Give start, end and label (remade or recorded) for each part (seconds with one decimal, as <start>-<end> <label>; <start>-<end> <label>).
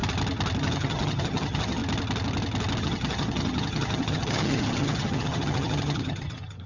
0.0-0.6 recorded; 0.6-1.8 remade; 1.8-2.8 recorded; 2.8-6.7 remade